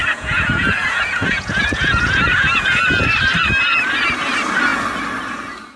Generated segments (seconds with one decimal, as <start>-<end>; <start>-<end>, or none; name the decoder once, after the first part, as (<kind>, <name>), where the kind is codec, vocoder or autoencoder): 0.0-2.8 (vocoder, Vocos)